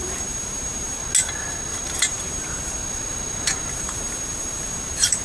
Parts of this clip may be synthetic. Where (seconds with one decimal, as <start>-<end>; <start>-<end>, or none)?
0.0-1.0; 1.9-2.8; 3.7-5.2